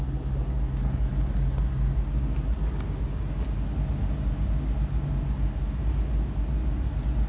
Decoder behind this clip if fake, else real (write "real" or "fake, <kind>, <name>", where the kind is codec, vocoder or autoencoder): real